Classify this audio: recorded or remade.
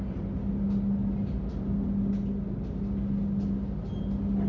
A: recorded